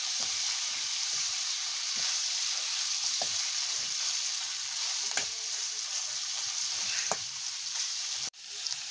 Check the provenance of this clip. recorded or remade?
remade